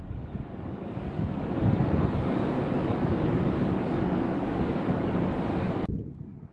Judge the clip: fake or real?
fake